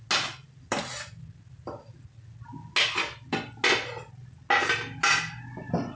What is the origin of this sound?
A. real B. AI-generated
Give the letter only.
A